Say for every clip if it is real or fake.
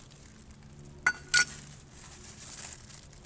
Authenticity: real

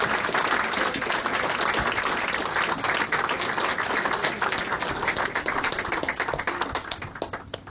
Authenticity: real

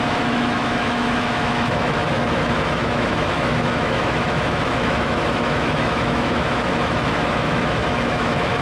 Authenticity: fake